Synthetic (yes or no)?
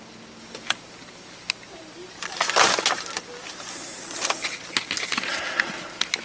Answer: no